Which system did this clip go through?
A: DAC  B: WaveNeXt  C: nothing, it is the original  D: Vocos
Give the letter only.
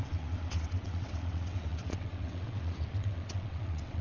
B